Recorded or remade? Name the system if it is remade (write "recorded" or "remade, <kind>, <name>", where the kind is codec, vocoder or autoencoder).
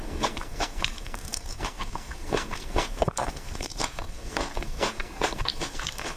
remade, codec, SNAC